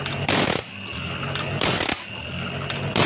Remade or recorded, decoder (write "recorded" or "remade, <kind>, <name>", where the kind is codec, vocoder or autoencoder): recorded